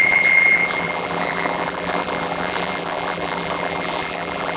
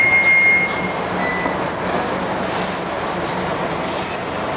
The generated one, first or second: first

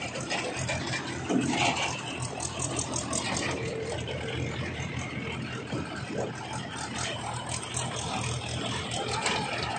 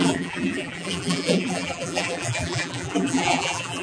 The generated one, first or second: second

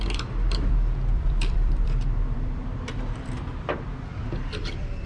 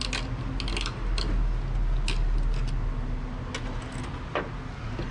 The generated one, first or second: first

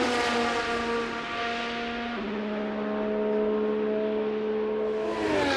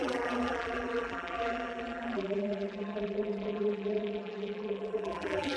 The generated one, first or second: second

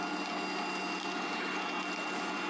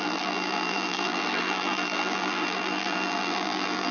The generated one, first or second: second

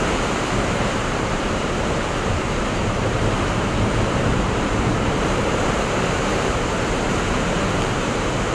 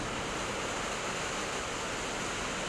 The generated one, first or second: first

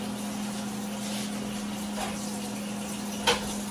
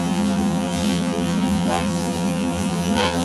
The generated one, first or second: second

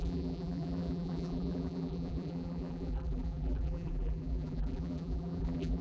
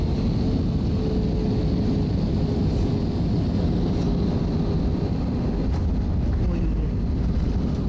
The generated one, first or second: first